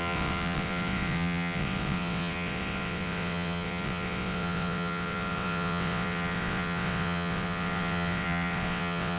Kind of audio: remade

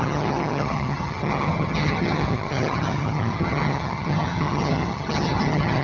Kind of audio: remade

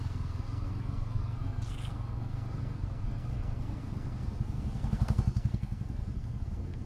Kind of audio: remade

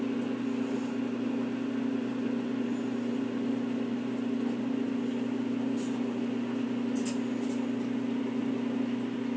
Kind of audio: recorded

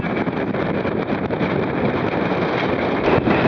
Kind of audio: remade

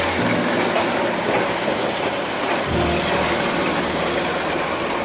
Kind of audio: recorded